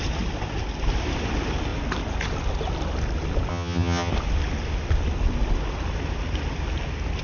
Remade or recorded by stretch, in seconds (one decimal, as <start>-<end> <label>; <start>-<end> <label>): 0.0-3.5 recorded; 3.5-4.1 remade; 4.1-7.2 recorded